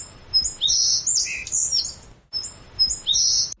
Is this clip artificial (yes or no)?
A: no